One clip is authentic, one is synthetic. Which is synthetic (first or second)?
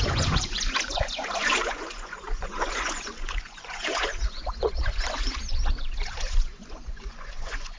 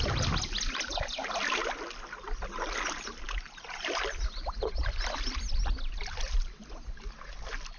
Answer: first